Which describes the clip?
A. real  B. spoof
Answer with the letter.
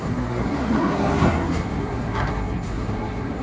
B